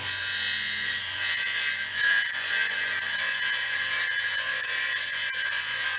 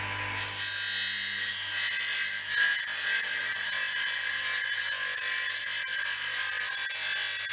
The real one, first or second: second